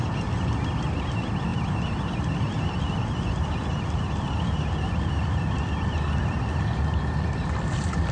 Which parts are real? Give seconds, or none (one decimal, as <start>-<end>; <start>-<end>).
0.0-8.1